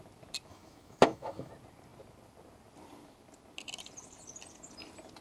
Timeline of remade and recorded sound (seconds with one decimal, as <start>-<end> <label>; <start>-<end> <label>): 0.0-0.5 recorded; 0.5-1.5 remade; 1.5-5.2 recorded